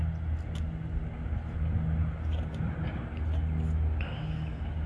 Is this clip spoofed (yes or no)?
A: no